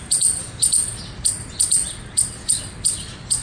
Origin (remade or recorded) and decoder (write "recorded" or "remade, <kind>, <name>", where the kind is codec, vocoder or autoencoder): recorded